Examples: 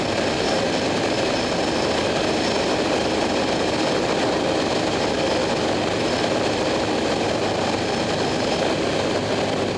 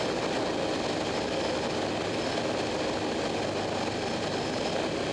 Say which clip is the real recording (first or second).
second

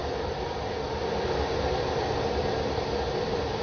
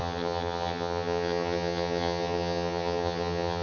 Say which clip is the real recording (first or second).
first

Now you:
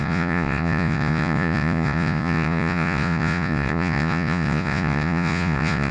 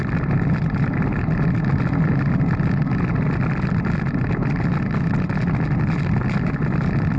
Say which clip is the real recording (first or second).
second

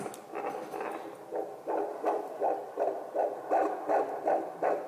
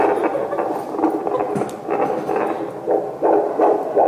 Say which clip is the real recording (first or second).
second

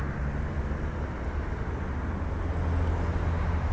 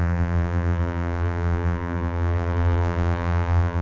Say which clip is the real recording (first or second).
first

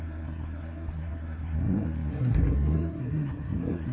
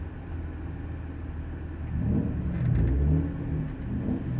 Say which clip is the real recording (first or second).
second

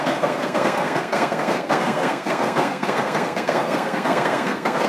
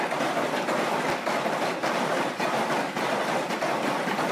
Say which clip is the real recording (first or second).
second